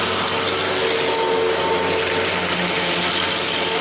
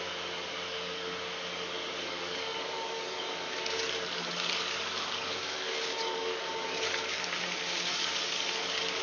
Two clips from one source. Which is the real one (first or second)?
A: first